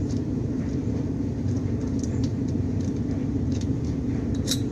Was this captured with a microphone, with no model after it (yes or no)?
no